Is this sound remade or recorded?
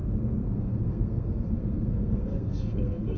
remade